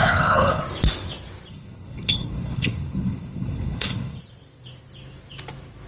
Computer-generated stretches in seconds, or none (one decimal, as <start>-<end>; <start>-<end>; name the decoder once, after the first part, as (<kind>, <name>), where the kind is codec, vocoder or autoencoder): 0.0-0.6 (codec, HILCodec); 1.5-4.2